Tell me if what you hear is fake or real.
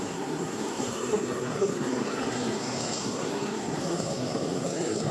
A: fake